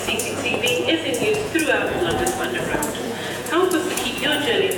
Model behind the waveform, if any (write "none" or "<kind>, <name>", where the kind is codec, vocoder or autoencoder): vocoder, Vocos